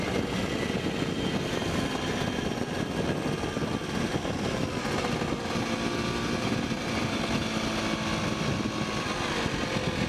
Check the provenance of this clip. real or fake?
real